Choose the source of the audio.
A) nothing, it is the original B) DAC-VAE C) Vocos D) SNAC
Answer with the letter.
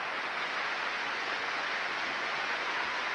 C